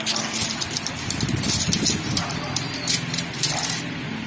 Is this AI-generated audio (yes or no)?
no